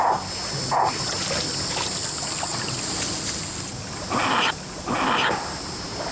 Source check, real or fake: real